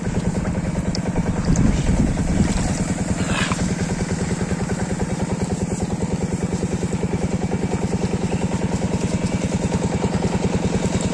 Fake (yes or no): no